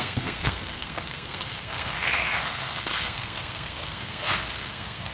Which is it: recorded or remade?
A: remade